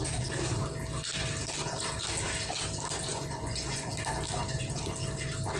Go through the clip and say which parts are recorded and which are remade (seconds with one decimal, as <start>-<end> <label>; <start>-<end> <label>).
0.0-3.1 recorded; 3.1-3.9 remade; 3.9-5.6 recorded